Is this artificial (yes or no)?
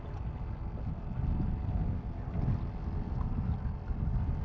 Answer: no